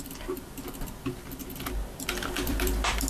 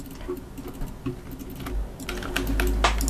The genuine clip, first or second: second